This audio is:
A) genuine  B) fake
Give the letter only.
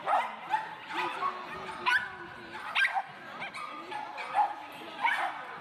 A